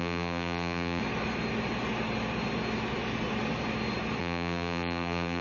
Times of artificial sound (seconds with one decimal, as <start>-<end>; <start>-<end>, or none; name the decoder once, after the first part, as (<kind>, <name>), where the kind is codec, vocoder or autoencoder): 0.0-1.0 (vocoder, BigVGAN v2); 4.2-5.4

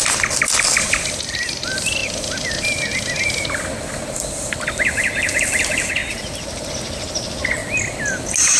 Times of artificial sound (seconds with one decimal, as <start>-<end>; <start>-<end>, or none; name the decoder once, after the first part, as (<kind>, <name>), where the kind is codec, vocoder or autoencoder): 6.0-6.7 (vocoder, BigVGAN v2)

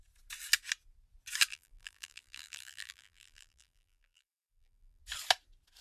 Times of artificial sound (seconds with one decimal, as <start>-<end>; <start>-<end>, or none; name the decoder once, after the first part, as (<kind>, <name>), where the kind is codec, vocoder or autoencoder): 1.5-5.0 (vocoder, BigVGAN v2)

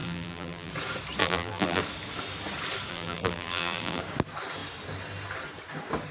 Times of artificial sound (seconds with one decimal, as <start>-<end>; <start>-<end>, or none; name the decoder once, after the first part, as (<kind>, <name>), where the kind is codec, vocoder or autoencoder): 0.0-0.7 (vocoder, BigVGAN v2); 1.2-1.8; 2.9-4.0

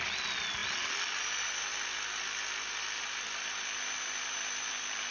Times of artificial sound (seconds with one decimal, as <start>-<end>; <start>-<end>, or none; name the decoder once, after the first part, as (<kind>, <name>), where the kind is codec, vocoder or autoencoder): 0.6-1.2 (vocoder, BigVGAN v2); 1.7-5.1